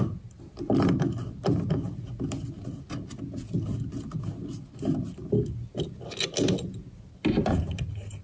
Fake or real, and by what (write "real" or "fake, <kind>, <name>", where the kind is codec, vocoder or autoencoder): real